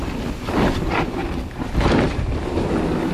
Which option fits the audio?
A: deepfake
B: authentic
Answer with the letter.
B